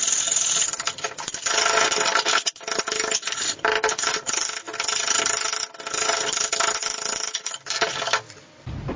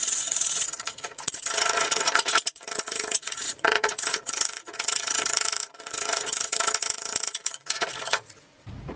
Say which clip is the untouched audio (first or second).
first